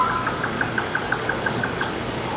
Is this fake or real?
fake